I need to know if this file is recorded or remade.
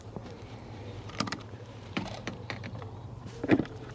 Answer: remade